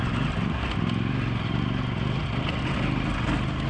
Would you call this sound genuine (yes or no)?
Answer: yes